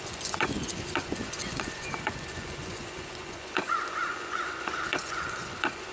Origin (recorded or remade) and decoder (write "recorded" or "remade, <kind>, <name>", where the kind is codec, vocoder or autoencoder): remade, vocoder, Vocos